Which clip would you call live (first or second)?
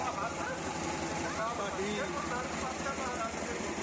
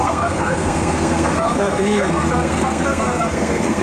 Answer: first